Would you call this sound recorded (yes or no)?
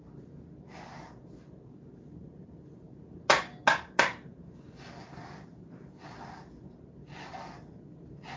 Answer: yes